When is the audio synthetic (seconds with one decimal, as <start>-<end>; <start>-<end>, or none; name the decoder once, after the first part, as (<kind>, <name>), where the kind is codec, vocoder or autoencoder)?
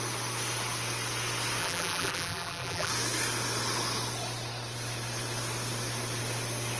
1.6-2.9 (vocoder, BigVGAN v2)